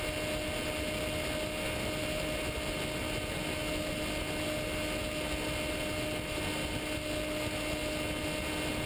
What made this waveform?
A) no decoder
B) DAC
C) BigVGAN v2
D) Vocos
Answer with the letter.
A